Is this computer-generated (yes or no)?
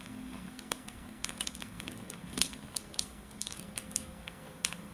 yes